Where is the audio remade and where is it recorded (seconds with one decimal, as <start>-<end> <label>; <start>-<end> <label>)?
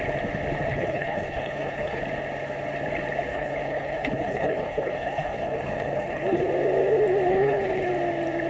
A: 0.0-0.7 recorded; 0.7-2.0 remade; 2.0-3.3 recorded; 3.3-6.5 remade; 6.5-7.3 recorded; 7.3-7.9 remade; 7.9-8.5 recorded